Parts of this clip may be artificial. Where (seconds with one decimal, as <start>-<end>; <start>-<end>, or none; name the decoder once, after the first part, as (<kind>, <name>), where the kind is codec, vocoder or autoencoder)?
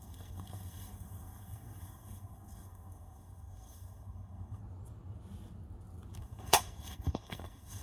0.0-4.6 (codec, SNAC); 6.2-7.8